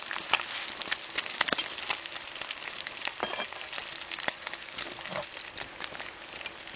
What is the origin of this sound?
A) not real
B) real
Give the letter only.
B